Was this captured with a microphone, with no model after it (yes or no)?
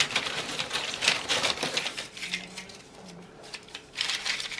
no